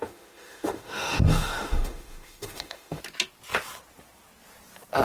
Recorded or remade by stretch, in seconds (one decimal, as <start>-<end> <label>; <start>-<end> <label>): 0.0-3.0 remade; 3.0-5.0 recorded